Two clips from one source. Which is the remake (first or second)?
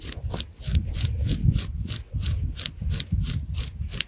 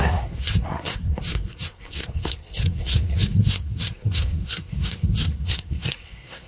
second